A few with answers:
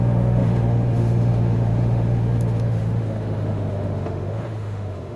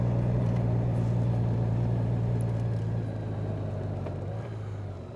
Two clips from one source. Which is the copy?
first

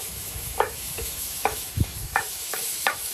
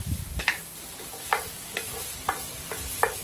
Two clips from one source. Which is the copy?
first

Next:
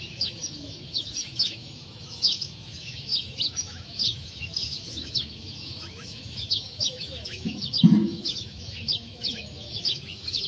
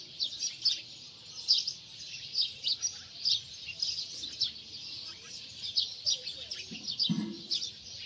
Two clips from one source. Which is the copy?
first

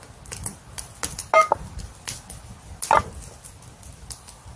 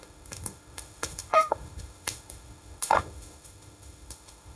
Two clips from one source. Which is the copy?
second